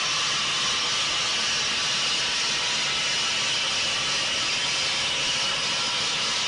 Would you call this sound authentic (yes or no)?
yes